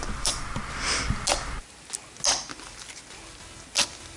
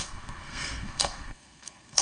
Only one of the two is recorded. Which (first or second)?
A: first